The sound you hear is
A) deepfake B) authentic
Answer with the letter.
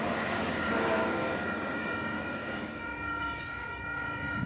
A